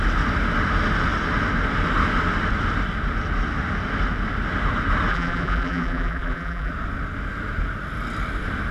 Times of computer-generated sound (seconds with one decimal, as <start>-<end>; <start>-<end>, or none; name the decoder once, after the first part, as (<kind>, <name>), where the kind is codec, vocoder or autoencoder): 5.1-6.7 (vocoder, BigVGAN v2)